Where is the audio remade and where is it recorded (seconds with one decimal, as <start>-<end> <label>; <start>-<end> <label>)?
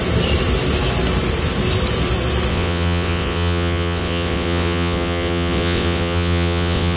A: 0.0-2.5 recorded; 2.5-7.0 remade